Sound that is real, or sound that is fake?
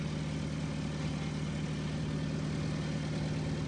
real